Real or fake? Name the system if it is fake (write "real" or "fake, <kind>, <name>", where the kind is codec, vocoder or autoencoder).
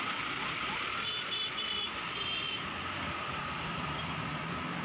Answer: fake, vocoder, BigVGAN v2